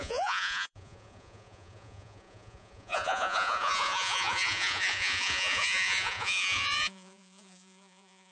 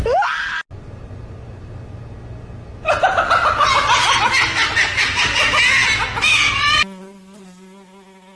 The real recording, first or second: second